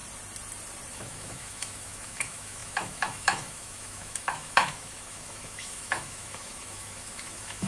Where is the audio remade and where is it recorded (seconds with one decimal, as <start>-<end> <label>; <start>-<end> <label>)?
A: 0.0-0.9 recorded; 0.9-7.7 remade